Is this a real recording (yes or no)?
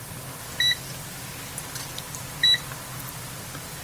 yes